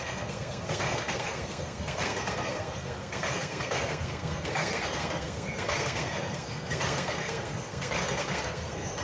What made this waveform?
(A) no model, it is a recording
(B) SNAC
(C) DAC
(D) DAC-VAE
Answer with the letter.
B